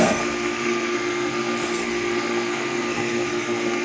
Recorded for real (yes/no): no